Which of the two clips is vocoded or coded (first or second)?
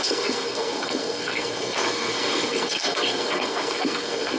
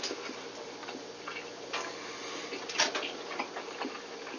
first